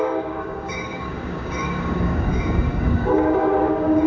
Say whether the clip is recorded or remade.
remade